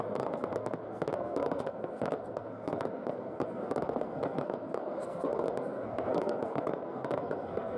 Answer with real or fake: fake